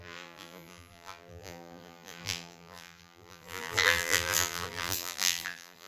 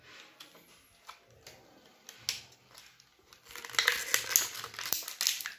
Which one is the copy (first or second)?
first